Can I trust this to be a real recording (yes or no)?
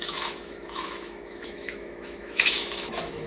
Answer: no